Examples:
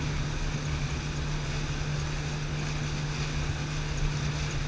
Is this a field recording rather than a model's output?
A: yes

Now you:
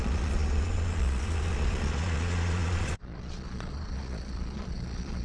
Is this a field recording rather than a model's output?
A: no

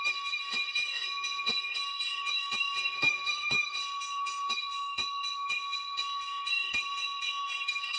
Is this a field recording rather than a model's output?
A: no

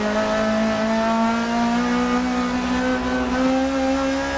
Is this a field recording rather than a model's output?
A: yes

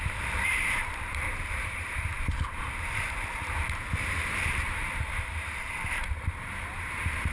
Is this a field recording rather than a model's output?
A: no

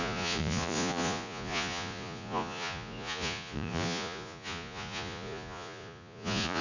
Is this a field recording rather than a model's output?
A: no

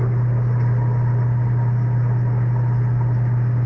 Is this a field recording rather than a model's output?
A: yes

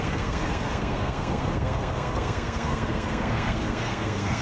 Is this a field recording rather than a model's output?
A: no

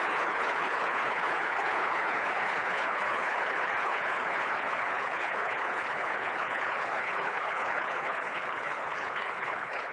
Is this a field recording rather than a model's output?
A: no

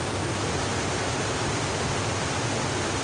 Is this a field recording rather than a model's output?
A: yes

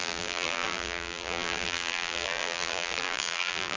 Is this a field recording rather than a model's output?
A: no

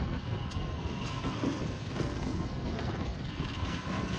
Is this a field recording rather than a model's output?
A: no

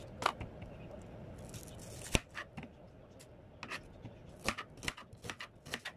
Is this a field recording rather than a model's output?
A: yes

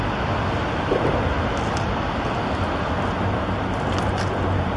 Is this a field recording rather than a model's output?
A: yes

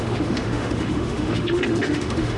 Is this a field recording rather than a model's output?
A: no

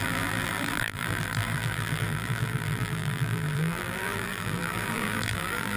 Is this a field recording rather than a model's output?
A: no